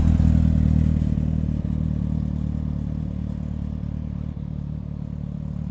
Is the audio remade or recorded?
recorded